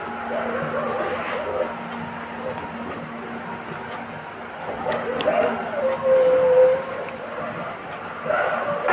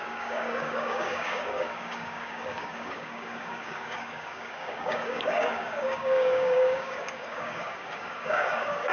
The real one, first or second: first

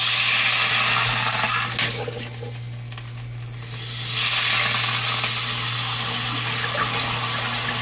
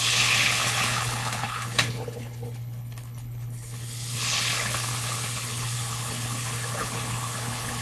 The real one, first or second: first